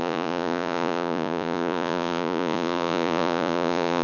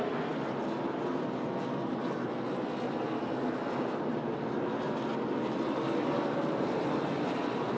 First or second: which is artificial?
first